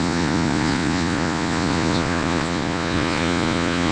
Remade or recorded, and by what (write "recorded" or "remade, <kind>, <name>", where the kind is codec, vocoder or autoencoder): remade, vocoder, Vocos